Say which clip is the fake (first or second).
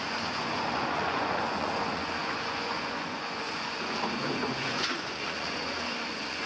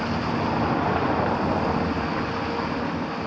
first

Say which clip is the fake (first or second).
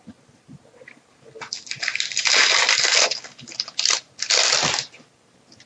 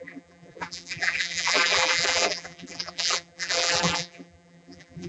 second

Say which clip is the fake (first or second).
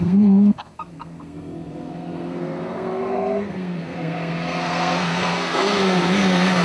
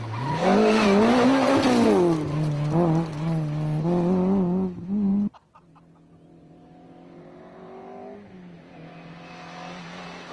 first